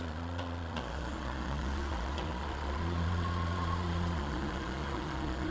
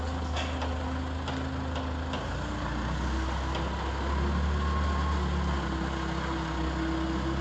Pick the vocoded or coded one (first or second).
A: first